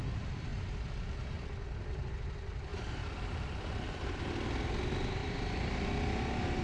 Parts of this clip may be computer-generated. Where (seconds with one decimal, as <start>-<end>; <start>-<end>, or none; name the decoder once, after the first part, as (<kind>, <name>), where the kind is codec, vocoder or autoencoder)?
2.7-4.0 (vocoder, BigVGAN v2); 5.2-5.8